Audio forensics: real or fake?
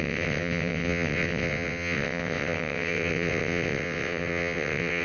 fake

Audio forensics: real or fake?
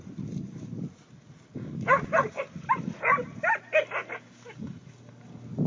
real